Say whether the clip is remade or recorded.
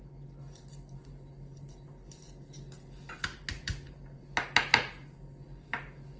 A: recorded